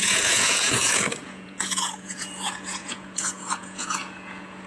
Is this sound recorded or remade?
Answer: remade